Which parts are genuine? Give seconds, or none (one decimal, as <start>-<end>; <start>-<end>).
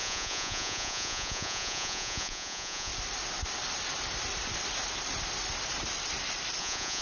2.9-6.6